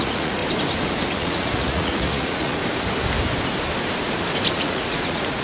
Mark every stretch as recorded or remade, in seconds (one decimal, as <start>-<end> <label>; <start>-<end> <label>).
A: 0.0-0.4 remade; 0.4-1.1 recorded; 1.1-2.6 remade; 2.6-4.5 recorded; 4.5-5.4 remade